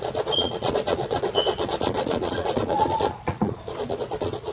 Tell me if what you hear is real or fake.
fake